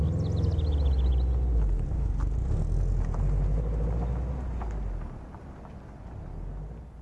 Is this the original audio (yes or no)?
yes